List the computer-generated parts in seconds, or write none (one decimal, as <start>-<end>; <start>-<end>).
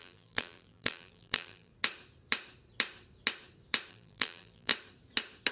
0.0-1.7; 3.9-4.7